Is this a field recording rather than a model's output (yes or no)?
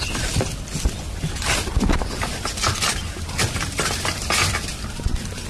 yes